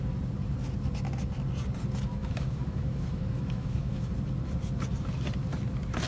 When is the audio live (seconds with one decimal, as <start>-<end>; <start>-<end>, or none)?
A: 0.0-2.2; 4.1-6.1